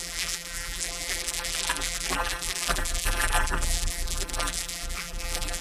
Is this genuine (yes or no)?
no